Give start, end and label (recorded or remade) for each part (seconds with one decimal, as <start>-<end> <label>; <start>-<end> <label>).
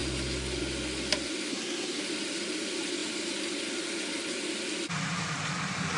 0.0-1.5 recorded; 1.5-2.0 remade; 2.0-6.0 recorded